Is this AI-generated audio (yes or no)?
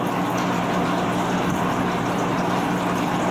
no